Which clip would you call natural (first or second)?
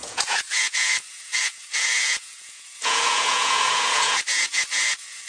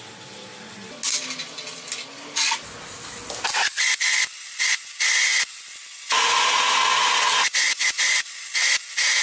second